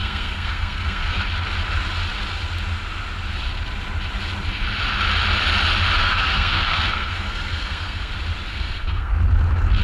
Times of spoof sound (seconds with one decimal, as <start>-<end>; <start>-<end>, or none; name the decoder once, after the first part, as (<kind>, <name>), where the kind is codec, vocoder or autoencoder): 0.0-1.2 (codec, SNAC); 6.0-8.1; 8.5-9.1